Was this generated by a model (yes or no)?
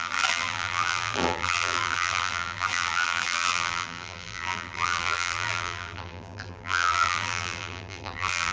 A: yes